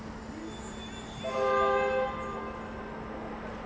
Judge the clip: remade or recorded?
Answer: recorded